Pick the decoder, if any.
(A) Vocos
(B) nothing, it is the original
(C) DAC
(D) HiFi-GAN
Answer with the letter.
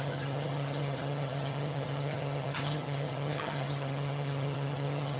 D